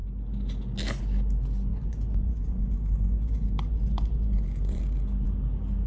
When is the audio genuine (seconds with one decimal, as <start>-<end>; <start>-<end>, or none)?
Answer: 0.0-1.7; 4.8-5.9